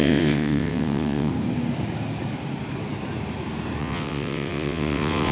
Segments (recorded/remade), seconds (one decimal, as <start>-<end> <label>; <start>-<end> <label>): 0.0-1.3 remade; 1.3-3.8 recorded; 3.8-5.3 remade